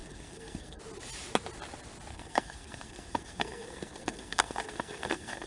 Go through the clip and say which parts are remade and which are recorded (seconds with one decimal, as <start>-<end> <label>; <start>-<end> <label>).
0.0-0.8 remade; 0.8-2.1 recorded; 2.1-5.5 remade

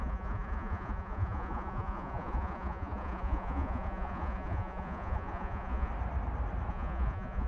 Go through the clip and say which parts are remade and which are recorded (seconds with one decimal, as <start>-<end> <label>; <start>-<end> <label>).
0.0-5.9 remade; 5.9-6.7 recorded; 6.7-7.5 remade

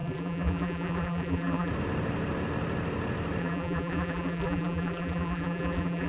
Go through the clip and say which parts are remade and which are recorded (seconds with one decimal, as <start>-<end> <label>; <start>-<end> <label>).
0.0-1.7 remade; 1.7-3.4 recorded; 3.4-6.1 remade

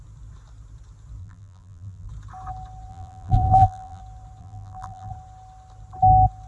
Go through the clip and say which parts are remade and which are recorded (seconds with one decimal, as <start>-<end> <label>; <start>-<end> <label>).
0.0-1.2 recorded; 1.2-2.1 remade; 2.1-2.9 recorded; 2.9-4.0 remade; 4.0-4.4 recorded; 4.4-5.1 remade; 5.1-6.5 recorded

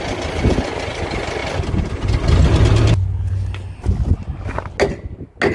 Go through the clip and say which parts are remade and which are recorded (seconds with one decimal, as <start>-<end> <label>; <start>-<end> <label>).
0.0-5.5 recorded

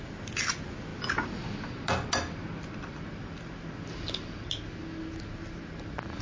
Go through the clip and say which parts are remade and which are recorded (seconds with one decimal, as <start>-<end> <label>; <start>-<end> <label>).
0.0-6.2 recorded